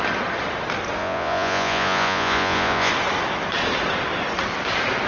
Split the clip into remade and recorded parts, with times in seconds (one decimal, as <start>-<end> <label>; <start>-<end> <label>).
0.0-1.0 recorded; 1.0-2.9 remade; 2.9-5.1 recorded